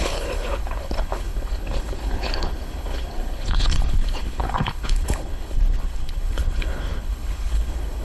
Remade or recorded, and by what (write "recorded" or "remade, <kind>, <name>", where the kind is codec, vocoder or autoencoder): remade, codec, HILCodec